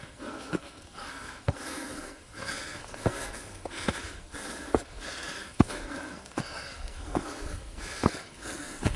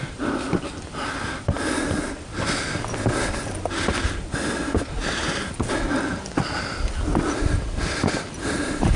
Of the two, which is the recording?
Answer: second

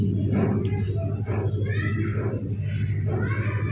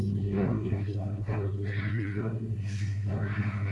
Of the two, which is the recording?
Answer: first